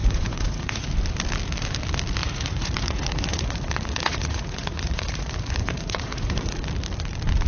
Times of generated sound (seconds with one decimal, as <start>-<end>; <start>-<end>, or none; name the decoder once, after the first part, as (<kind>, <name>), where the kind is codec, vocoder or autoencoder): 0.0-0.9 (vocoder, Vocos); 2.2-6.7